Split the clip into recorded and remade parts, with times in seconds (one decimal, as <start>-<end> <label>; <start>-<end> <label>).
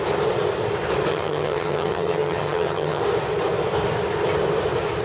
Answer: 0.0-1.1 recorded; 1.1-3.0 remade; 3.0-5.0 recorded